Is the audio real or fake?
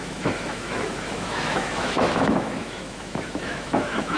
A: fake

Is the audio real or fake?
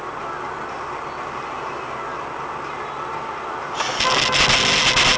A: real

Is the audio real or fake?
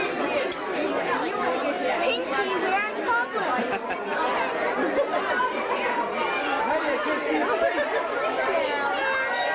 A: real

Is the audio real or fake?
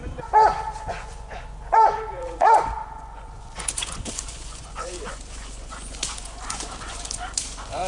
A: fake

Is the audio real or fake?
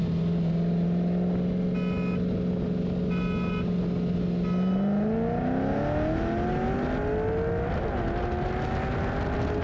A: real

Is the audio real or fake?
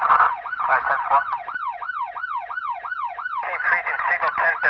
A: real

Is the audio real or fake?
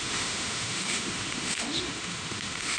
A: fake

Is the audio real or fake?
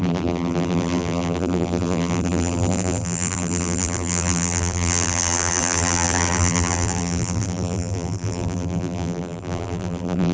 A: fake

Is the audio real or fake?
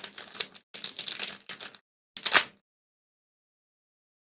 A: real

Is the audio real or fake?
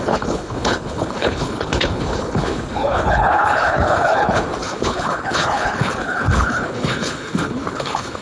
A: fake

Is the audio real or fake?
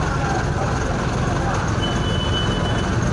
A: real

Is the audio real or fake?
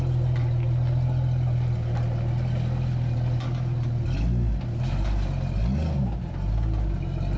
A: real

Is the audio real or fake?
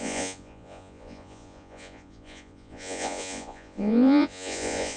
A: fake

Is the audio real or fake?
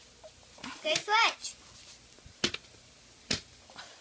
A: real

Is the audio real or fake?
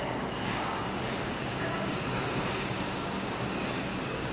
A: fake